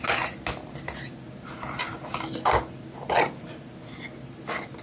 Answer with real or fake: real